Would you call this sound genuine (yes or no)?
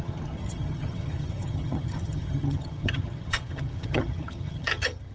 no